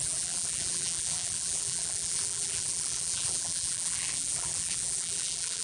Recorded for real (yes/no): no